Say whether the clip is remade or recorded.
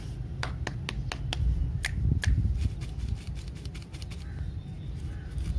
recorded